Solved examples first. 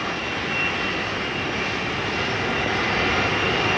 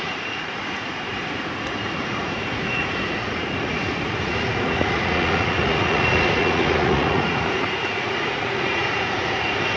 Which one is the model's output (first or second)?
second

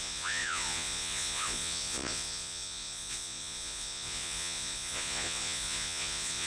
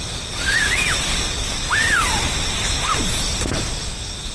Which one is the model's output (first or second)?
first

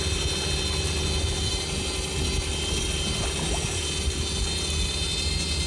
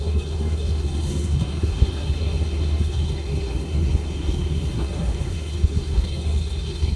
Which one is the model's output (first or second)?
second